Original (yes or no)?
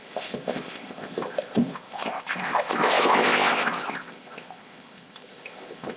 no